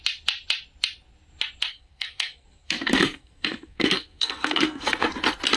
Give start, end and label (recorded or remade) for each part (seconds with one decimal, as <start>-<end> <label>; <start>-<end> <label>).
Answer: 0.0-1.7 recorded; 1.7-5.1 remade; 5.1-5.6 recorded